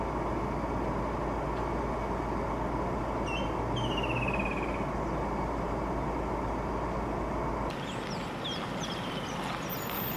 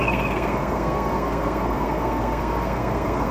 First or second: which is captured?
first